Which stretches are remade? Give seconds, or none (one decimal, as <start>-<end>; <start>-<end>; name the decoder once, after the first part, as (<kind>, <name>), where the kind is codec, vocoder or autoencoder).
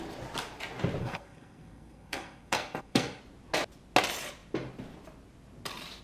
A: 1.0-3.2 (codec, SNAC)